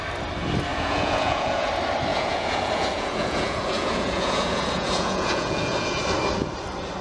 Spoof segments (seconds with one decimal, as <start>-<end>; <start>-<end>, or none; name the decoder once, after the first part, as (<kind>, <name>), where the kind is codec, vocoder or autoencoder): 0.7-1.7 (vocoder, Vocos); 2.1-6.0